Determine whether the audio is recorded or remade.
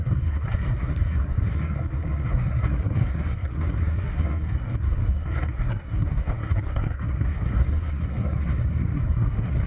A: remade